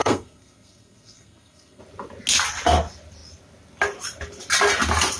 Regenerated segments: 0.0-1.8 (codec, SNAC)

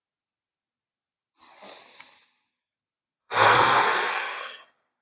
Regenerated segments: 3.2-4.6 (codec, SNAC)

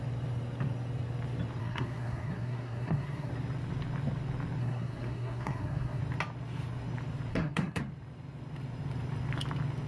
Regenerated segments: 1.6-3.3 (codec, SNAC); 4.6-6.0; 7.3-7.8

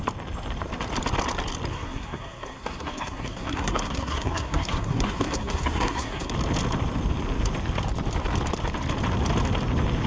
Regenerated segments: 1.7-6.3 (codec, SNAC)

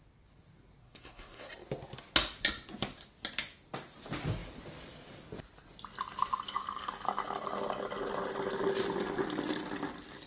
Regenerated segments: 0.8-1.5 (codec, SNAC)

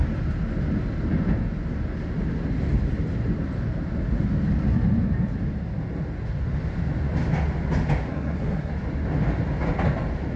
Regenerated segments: 8.1-8.7 (codec, SNAC)